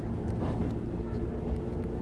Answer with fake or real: real